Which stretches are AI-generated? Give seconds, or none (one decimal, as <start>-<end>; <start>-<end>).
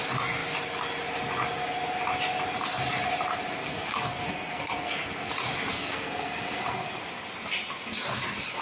3.6-5.3; 5.7-7.0